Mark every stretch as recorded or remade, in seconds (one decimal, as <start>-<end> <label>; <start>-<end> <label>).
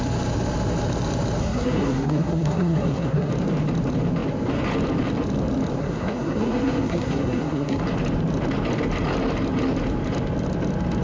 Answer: 0.0-1.4 recorded; 1.4-3.3 remade; 3.3-5.8 recorded; 5.8-7.8 remade; 7.8-11.0 recorded